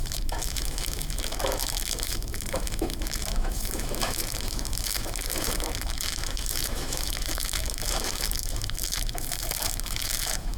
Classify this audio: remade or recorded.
remade